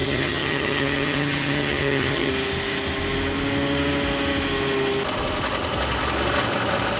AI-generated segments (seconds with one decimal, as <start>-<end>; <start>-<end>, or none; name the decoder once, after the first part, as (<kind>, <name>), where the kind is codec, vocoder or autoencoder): 0.0-2.3 (vocoder, HiFi-GAN)